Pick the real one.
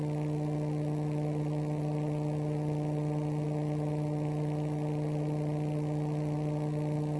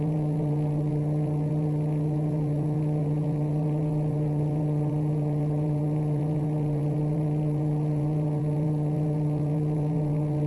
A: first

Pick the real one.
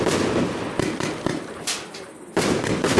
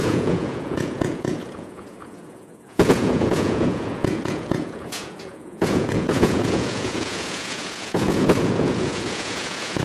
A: first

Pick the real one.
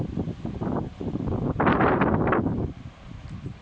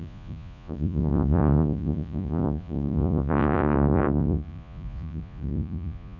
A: first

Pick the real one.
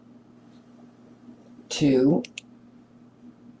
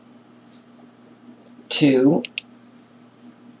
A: second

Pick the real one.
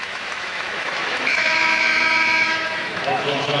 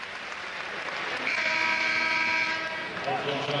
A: second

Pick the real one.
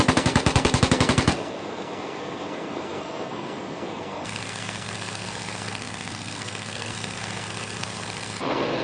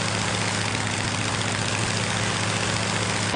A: second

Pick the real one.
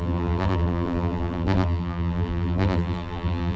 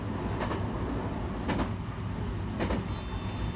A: second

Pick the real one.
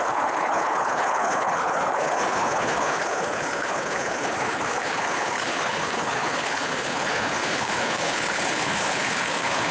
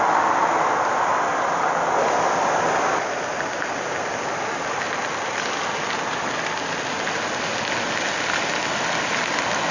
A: second